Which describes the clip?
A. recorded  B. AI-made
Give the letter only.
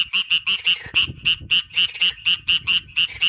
A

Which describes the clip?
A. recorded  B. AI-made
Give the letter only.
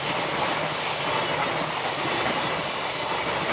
A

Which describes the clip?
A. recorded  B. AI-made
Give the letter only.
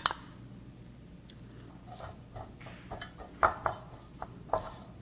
A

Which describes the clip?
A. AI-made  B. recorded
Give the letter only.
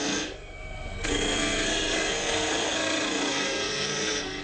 A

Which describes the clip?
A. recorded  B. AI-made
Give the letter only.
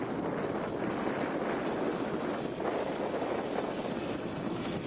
A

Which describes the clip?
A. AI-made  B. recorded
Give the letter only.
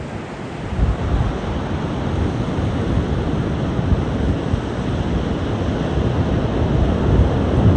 B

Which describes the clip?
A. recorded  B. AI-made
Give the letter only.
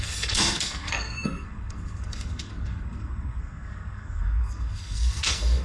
B